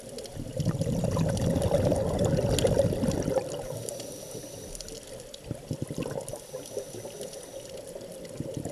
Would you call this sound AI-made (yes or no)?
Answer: no